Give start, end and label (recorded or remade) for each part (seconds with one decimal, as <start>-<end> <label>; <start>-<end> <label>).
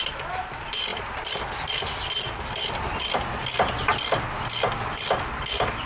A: 0.0-5.9 recorded